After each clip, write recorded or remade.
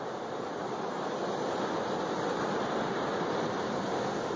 recorded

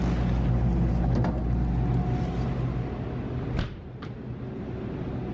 recorded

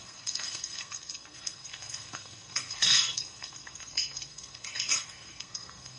remade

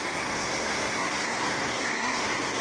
remade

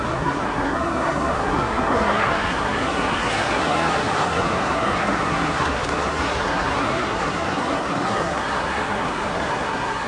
remade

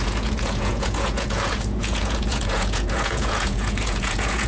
remade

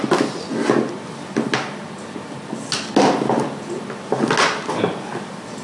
recorded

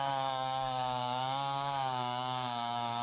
remade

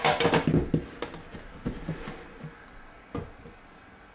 recorded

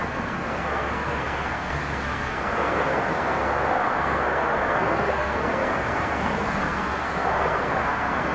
remade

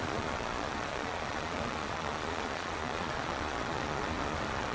remade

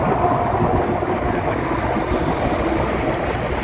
recorded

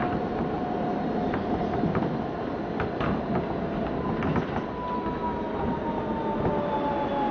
recorded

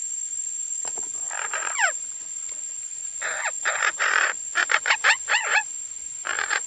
remade